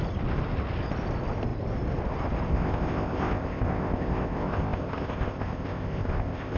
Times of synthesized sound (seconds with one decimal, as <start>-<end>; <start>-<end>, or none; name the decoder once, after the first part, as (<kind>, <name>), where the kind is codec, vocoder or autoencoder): 2.5-6.6 (codec, ZipCodec)